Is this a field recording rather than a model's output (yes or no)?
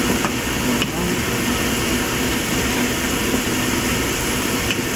yes